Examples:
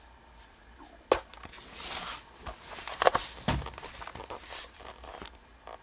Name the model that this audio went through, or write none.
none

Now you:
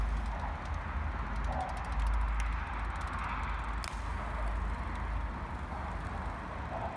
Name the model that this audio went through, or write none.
none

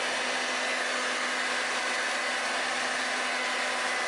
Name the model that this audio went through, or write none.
none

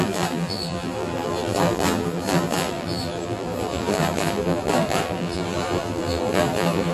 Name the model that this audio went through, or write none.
vocoder, BigVGAN v2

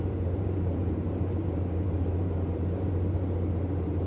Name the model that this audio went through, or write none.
vocoder, BigVGAN v2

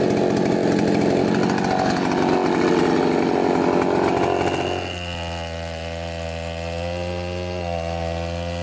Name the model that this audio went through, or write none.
none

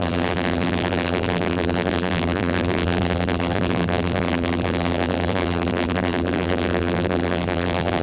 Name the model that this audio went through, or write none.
vocoder, BigVGAN v2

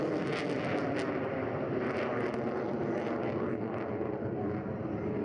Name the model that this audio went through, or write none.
none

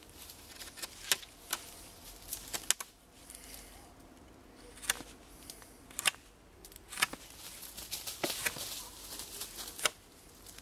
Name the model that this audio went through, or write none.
none